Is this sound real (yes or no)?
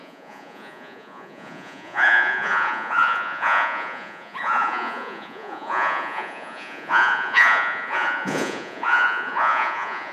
no